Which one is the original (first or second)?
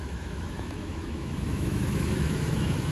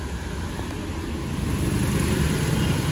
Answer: second